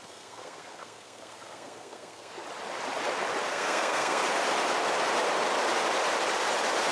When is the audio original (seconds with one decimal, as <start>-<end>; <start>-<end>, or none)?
2.3-3.5; 4.2-6.9